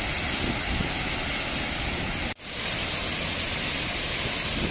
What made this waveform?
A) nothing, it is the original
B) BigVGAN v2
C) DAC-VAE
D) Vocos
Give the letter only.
A